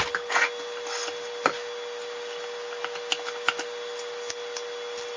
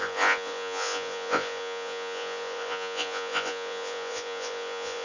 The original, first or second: first